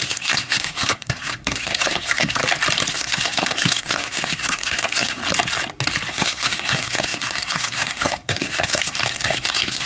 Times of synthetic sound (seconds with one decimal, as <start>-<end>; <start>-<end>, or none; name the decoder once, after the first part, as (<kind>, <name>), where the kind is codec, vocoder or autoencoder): 0.0-2.4 (codec, SNAC); 2.9-5.2; 6.1-9.9